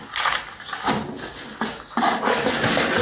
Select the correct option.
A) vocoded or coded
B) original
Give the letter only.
B